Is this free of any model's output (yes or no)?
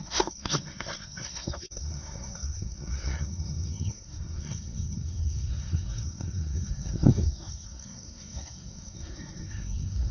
no